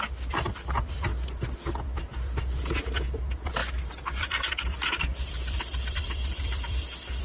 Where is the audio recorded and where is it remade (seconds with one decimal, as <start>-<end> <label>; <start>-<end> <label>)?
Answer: 0.0-1.1 remade; 1.1-3.1 recorded; 3.1-3.6 remade; 3.6-5.9 recorded; 5.9-7.2 remade